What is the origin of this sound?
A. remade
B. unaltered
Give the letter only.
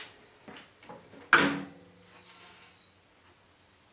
B